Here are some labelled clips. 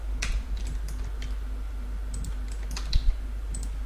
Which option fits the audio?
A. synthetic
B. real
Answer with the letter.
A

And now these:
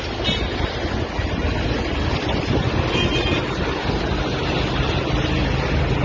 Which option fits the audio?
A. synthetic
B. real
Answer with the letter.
B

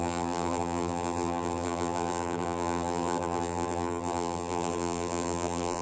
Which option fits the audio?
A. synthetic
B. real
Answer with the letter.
A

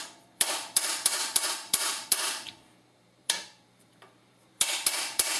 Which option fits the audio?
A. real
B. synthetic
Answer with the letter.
B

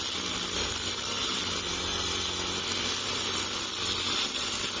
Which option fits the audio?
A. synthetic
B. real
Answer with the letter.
B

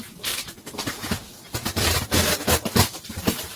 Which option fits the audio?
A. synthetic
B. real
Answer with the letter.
A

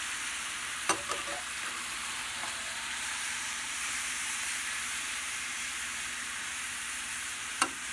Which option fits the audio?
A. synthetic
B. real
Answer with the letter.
A